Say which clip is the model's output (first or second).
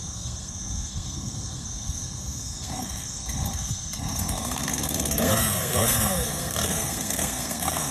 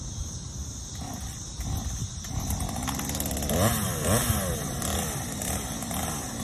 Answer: first